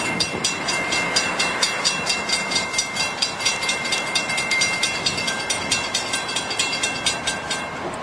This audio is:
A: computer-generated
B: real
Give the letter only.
B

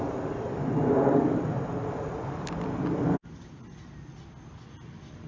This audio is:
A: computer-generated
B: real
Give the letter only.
B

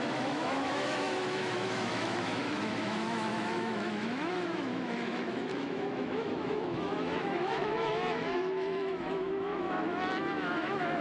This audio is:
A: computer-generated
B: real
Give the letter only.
A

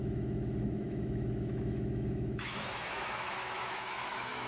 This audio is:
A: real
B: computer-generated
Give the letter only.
B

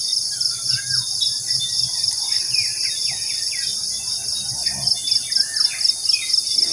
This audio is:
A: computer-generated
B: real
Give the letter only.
B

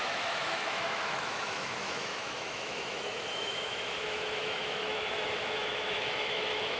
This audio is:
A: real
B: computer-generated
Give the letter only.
B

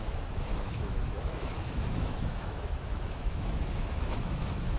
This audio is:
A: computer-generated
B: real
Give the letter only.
A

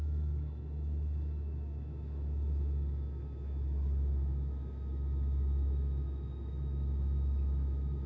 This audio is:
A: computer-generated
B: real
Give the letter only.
A